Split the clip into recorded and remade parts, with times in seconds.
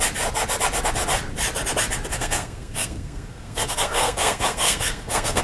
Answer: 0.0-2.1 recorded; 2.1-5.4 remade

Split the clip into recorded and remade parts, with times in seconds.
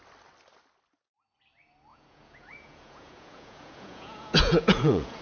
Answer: 0.0-1.9 recorded; 1.9-5.2 remade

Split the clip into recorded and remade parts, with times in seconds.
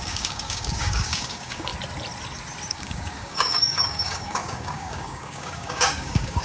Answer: 0.0-1.7 remade; 1.7-2.7 recorded; 2.7-6.4 remade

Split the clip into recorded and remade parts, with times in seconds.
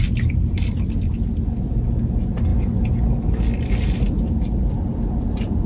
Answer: 0.0-5.7 recorded